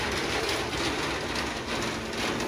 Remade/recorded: recorded